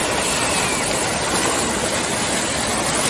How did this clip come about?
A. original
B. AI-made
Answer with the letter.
A